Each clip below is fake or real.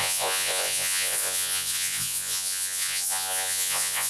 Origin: fake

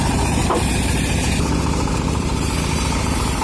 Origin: fake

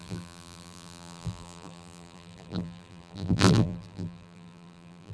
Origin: fake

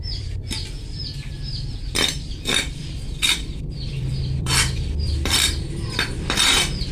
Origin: fake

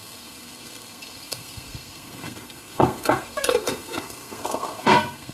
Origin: fake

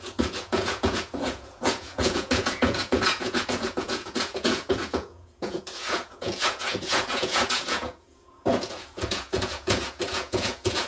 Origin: fake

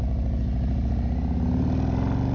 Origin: real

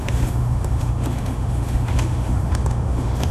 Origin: fake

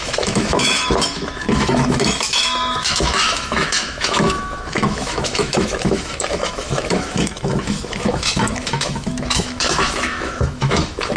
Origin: fake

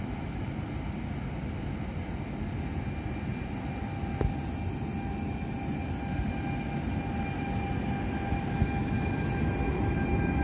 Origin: real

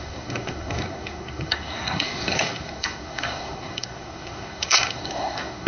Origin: fake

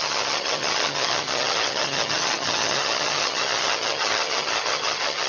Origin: fake